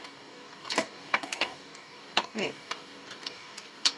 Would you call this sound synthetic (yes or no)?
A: yes